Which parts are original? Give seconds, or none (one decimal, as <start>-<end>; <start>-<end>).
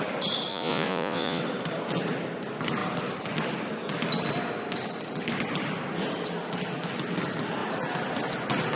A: 0.0-0.5; 1.4-8.8